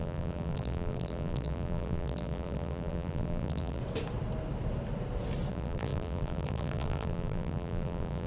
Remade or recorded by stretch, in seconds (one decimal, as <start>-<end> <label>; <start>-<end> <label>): 0.0-3.8 remade; 3.8-5.5 recorded; 5.5-8.3 remade